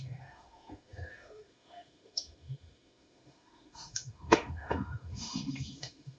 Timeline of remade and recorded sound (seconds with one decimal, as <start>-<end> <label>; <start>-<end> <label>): 0.0-6.2 remade